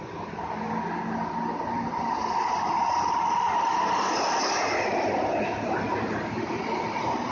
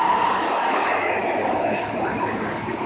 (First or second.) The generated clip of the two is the second